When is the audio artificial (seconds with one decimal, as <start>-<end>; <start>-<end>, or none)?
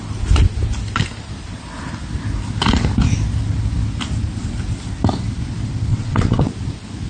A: 5.9-6.5